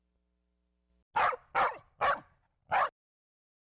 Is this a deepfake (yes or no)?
no